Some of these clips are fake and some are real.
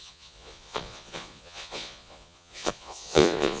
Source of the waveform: fake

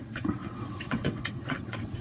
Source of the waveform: fake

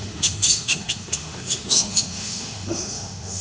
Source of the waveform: fake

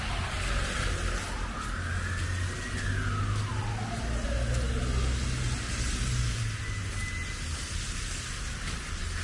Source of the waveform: real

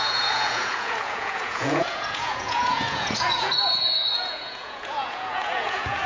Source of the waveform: fake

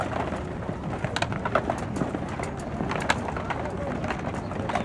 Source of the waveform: real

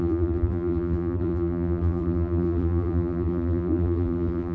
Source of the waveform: fake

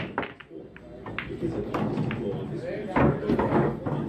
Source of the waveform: real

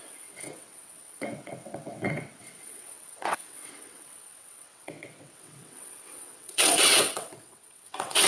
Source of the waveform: fake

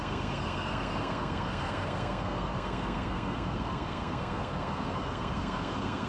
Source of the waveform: fake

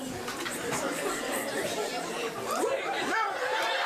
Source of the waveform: fake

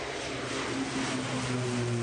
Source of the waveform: real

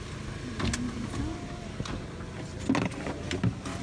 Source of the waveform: real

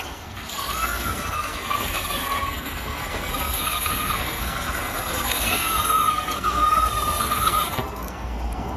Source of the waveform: fake